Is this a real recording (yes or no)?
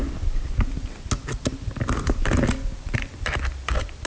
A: yes